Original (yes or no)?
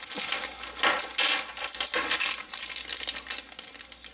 yes